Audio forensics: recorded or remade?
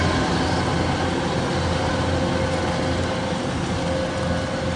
recorded